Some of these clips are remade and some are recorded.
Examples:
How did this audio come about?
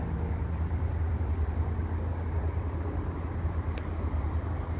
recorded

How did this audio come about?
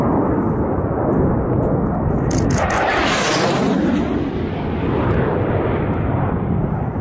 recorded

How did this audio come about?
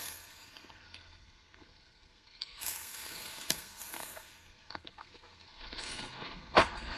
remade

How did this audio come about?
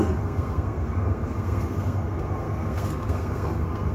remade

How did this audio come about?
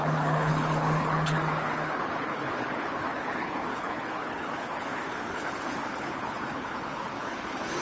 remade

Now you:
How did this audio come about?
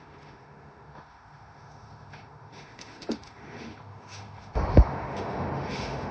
remade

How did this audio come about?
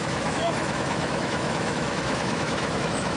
remade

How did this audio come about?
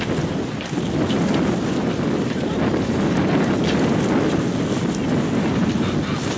recorded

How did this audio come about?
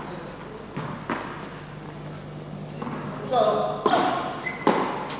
recorded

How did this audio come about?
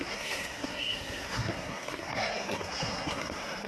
remade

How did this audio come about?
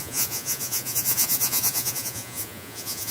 remade